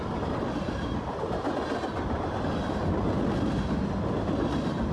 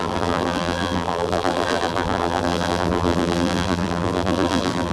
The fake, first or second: second